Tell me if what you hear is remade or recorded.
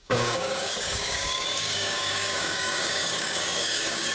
remade